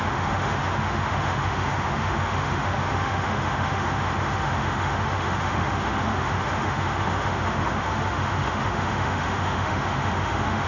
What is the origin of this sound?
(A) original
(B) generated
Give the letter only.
B